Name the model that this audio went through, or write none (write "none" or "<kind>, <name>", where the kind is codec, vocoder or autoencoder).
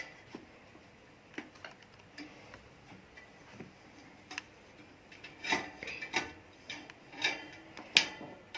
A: none